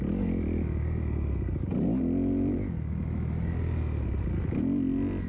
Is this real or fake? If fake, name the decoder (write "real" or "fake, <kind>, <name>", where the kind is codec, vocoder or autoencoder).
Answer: real